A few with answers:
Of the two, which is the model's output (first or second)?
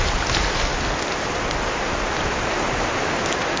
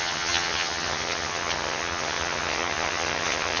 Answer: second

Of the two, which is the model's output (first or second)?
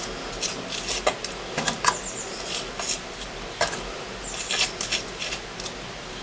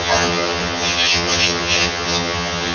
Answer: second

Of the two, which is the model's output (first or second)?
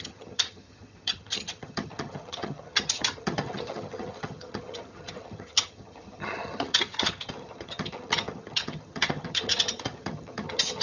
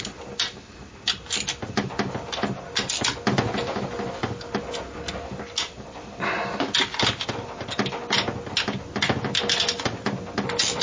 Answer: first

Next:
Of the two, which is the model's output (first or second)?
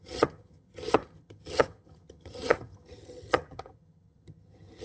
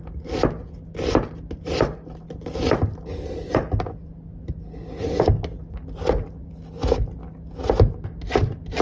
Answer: first